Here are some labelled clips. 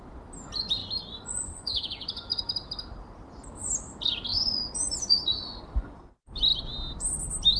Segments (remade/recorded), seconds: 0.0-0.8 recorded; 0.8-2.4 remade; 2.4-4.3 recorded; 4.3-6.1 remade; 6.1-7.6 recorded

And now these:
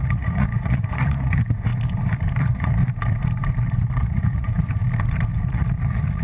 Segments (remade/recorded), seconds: 0.0-1.7 remade; 1.7-2.4 recorded; 2.4-2.8 remade; 2.8-4.0 recorded; 4.0-4.8 remade; 4.8-5.5 recorded; 5.5-6.2 remade